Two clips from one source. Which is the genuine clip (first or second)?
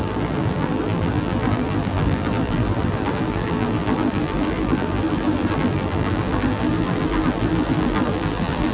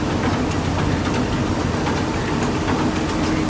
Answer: second